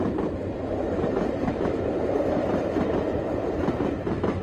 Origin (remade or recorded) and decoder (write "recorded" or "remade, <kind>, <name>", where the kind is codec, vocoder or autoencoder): remade, vocoder, BigVGAN v2